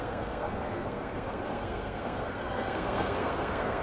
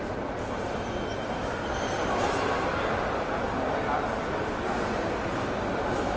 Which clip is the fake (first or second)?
first